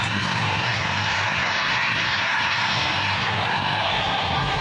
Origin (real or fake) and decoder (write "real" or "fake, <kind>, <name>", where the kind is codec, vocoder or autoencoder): fake, codec, SNAC